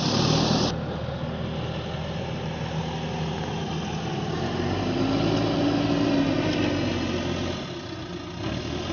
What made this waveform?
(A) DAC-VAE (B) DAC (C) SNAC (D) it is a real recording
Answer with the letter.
D